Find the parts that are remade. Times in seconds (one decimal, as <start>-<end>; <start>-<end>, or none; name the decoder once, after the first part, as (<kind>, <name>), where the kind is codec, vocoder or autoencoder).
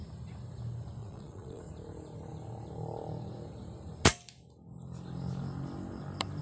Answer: 1.0-1.6 (vocoder, Vocos)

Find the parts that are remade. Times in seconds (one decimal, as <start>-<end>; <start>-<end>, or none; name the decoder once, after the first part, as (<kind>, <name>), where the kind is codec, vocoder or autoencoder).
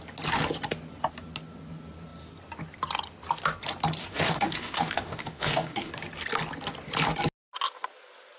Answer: 4.0-5.9 (autoencoder, DAC-VAE)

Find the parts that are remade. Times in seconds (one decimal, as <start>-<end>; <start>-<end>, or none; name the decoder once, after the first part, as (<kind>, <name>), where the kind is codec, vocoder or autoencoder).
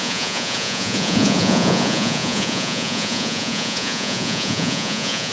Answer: 0.0-5.3 (vocoder, Vocos)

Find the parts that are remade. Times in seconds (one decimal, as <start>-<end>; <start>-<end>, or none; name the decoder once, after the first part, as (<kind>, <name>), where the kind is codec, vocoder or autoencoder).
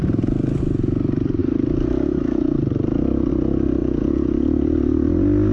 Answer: 3.8-4.3 (vocoder, Vocos)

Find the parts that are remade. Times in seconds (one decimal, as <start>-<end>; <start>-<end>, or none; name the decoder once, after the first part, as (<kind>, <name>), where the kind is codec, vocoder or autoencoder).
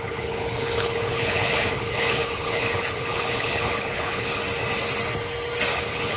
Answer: 0.0-4.4 (codec, HILCodec); 5.7-6.2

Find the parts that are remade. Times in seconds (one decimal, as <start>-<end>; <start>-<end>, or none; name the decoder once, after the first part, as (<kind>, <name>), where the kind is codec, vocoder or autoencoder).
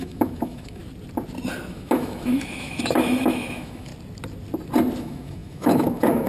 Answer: 0.0-0.8 (autoencoder, DAC-VAE); 1.7-3.9; 5.0-6.3